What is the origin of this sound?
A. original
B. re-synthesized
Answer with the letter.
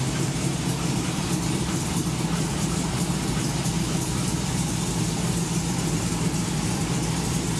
B